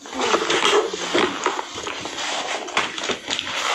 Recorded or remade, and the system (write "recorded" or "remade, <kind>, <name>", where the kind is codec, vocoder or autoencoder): recorded